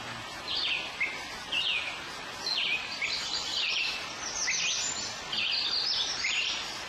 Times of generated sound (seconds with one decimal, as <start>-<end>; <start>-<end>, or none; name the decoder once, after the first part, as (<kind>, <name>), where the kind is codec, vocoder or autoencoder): none

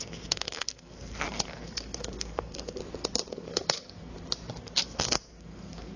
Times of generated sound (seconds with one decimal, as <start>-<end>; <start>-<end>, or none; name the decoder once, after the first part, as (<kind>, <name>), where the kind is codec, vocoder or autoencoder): 0.0-2.8 (codec, SNAC); 3.3-4.1; 4.6-6.0